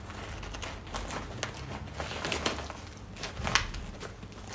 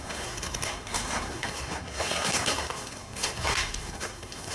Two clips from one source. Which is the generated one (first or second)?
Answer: second